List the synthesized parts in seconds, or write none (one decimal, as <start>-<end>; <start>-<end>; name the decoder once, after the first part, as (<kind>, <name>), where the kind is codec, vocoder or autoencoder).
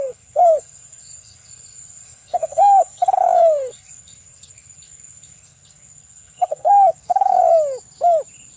0.0-7.4 (codec, SNAC)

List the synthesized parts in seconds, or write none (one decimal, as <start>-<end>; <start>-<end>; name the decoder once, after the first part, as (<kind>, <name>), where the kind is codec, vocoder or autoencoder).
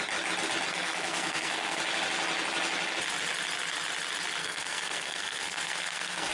0.7-1.8 (codec, SNAC); 4.4-6.3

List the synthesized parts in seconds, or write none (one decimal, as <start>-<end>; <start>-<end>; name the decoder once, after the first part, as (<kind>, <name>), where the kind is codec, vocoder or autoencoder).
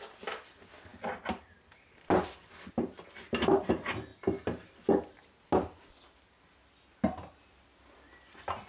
none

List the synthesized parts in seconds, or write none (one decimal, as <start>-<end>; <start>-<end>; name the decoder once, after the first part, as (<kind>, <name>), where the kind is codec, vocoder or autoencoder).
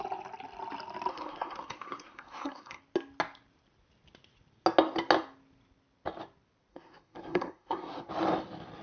1.1-2.8 (codec, SNAC); 6.7-8.1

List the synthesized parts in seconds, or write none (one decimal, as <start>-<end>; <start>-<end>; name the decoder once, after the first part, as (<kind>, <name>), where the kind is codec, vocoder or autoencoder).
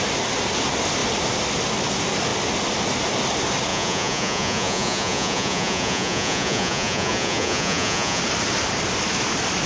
3.7-8.2 (vocoder, Vocos)